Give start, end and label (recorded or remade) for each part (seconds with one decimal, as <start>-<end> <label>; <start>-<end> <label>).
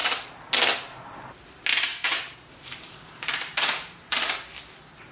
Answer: 0.0-1.9 recorded; 1.9-4.4 remade; 4.4-5.1 recorded